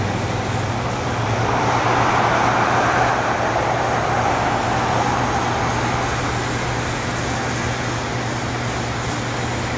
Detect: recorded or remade recorded